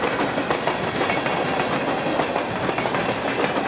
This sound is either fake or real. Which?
fake